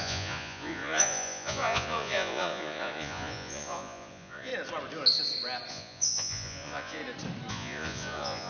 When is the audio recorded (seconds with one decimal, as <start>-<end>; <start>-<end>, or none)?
4.5-5.7; 7.0-7.5